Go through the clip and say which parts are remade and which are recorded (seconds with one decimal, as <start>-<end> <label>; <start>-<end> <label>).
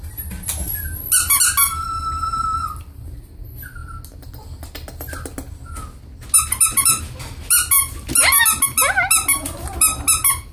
0.0-10.5 recorded